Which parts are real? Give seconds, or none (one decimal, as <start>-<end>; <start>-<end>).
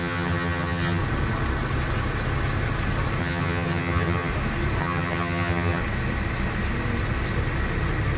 1.0-3.2; 4.3-4.8; 5.8-8.2